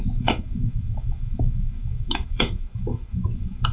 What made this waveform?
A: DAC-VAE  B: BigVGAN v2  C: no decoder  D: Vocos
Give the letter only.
A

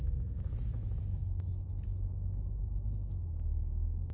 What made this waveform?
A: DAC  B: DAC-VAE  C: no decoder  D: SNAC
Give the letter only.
B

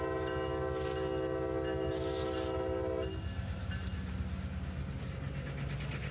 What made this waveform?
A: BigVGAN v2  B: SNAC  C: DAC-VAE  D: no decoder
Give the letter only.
D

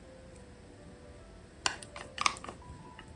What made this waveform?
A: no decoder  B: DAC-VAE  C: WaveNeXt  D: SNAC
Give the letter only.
A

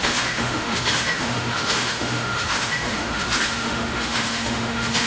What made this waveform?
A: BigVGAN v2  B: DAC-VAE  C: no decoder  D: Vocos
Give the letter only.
B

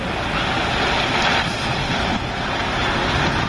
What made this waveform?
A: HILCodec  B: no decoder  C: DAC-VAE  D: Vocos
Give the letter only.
B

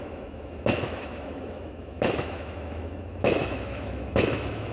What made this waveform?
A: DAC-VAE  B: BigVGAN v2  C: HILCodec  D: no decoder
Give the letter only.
A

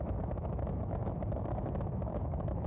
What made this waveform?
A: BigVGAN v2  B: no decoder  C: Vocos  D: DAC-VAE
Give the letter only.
D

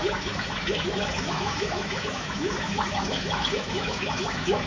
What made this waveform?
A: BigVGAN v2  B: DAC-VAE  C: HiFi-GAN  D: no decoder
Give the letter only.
B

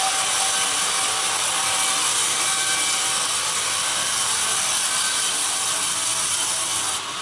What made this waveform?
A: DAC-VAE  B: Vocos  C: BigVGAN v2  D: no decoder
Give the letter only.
D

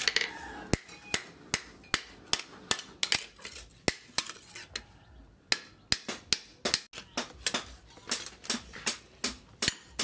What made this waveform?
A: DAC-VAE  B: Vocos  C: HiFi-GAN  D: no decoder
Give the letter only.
D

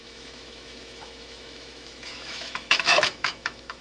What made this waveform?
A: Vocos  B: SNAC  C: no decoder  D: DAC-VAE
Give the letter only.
D